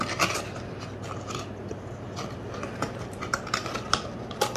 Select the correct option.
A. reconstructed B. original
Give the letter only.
B